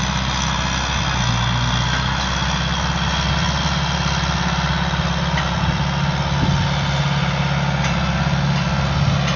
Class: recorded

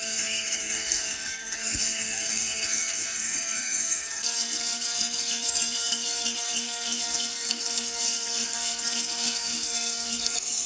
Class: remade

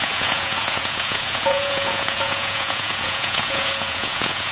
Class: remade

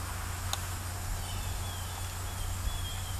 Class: recorded